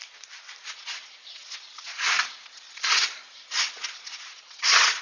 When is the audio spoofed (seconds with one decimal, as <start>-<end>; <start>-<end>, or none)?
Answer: 0.6-5.0